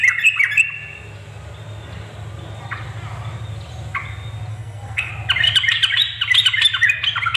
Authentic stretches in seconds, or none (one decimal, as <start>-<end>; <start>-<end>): 0.0-4.5; 5.1-7.4